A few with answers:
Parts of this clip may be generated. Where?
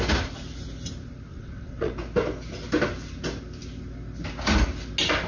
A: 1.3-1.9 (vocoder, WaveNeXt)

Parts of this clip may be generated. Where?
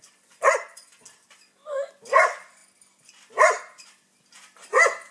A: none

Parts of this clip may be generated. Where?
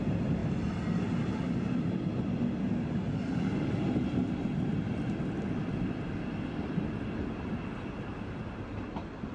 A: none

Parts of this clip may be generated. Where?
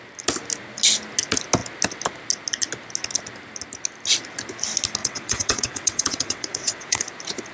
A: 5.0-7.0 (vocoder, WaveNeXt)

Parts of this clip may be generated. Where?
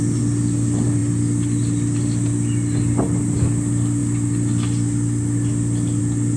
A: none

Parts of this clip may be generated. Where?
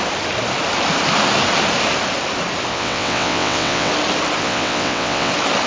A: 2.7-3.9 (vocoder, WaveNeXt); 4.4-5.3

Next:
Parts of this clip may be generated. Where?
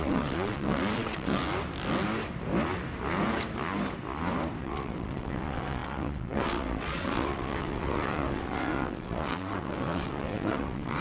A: 0.0-1.4 (vocoder, WaveNeXt); 4.6-11.0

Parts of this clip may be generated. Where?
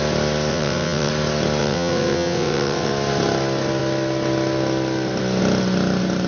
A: 0.5-1.1 (vocoder, WaveNeXt); 1.6-2.9